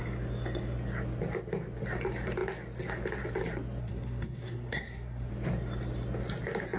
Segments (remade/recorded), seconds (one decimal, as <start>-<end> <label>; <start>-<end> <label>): 0.0-3.8 recorded; 3.8-5.3 remade; 5.3-6.8 recorded